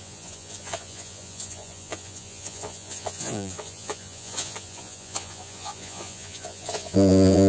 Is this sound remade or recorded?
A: remade